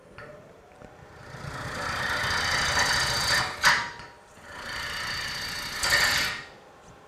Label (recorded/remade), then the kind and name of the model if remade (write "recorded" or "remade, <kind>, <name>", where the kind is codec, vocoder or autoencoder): recorded